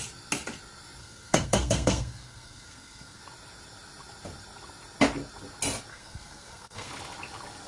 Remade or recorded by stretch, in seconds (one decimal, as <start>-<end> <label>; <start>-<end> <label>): 0.0-1.0 recorded; 1.0-3.2 remade; 3.2-5.9 recorded; 5.9-6.9 remade; 6.9-7.7 recorded